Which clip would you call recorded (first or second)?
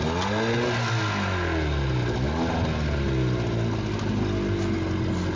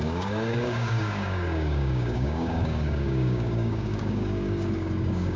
first